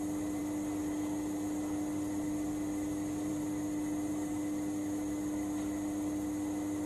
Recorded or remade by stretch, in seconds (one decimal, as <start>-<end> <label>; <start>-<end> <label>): 0.0-6.9 recorded